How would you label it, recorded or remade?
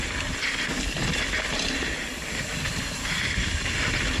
recorded